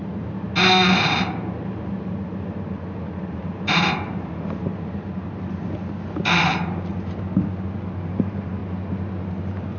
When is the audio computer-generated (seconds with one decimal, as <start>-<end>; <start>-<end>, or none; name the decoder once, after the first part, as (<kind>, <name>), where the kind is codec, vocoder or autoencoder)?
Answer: 3.3-4.7 (vocoder, BigVGAN v2); 6.2-6.9; 8.1-8.6; 9.4-9.8